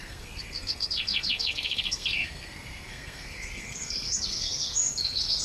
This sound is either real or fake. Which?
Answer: fake